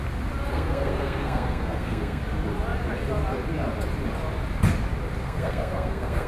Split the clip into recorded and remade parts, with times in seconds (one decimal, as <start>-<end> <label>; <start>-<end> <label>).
0.0-0.5 recorded; 0.5-2.2 remade; 2.2-5.2 recorded; 5.2-6.3 remade